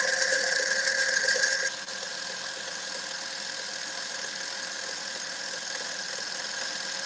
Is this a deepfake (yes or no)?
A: no